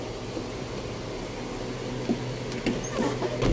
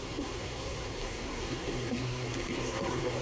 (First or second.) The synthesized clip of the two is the second